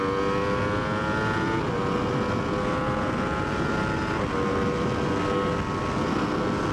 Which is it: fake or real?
real